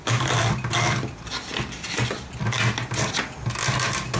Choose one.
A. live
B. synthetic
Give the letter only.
A